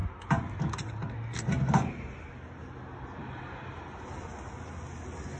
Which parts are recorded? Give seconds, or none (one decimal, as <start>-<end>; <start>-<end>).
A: 0.0-5.4